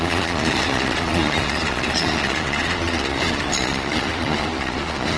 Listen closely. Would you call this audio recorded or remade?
remade